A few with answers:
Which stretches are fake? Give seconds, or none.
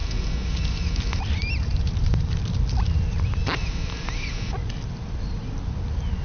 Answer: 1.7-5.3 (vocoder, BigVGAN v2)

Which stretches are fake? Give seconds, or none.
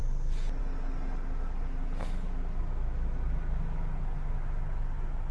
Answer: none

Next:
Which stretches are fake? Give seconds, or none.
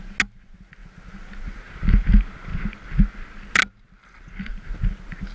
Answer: none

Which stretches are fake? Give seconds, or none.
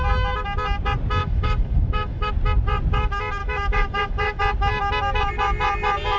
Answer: 1.2-2.3 (autoencoder, DAC-VAE); 3.4-4.4